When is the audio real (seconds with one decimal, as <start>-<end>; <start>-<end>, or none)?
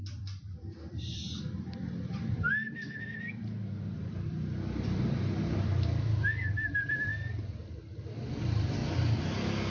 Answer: 7.1-8.4; 8.8-9.7